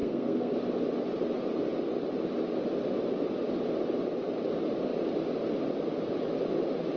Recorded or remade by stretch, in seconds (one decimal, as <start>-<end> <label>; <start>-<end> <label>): 0.0-0.5 remade; 0.5-7.0 recorded